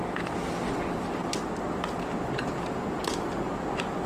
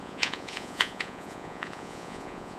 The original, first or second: first